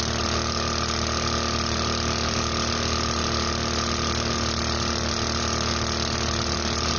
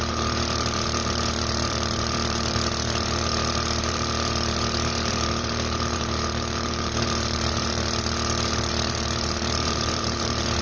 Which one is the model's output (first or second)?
second